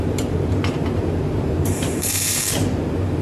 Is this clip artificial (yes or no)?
yes